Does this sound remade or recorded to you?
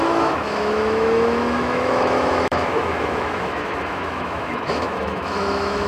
remade